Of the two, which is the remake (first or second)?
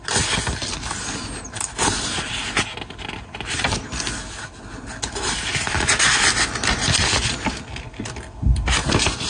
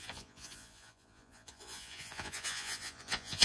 second